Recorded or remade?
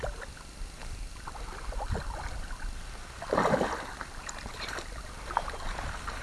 recorded